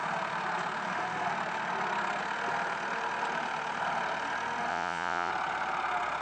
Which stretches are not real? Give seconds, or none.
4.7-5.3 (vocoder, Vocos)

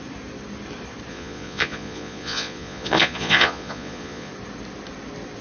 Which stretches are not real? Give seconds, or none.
1.1-4.3 (vocoder, Vocos)